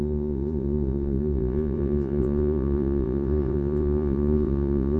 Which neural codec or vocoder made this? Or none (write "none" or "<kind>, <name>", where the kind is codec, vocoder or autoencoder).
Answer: vocoder, Vocos